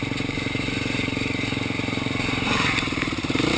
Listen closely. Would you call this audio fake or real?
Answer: fake